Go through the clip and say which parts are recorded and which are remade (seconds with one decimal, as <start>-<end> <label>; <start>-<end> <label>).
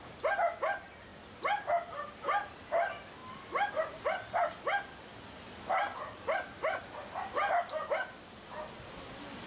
0.0-9.5 recorded